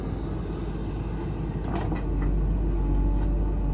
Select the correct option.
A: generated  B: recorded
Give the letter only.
B